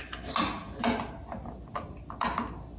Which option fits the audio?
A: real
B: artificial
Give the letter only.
A